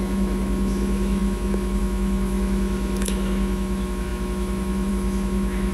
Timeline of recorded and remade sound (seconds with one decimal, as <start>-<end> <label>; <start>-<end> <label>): 0.0-5.7 remade

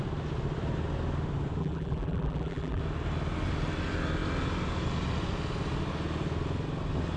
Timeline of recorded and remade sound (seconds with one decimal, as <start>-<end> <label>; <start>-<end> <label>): 0.0-1.6 recorded; 1.6-2.8 remade; 2.8-7.2 recorded

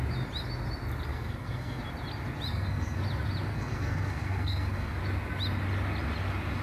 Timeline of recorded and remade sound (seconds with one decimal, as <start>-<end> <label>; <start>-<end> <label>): 0.0-1.1 recorded; 1.1-1.8 remade; 1.8-2.5 recorded; 2.5-3.0 remade; 3.0-3.5 recorded; 3.5-5.0 remade; 5.0-6.6 recorded

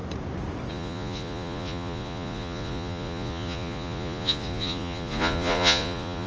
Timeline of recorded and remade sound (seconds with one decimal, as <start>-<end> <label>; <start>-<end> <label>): 0.0-0.7 recorded; 0.7-6.3 remade